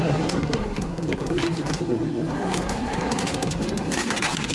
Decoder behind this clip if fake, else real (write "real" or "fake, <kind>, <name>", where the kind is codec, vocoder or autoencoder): fake, codec, SNAC